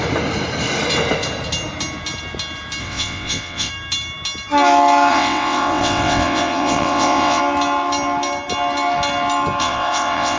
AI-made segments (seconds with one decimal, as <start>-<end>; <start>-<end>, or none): 2.8-3.7; 5.1-7.4; 9.6-10.4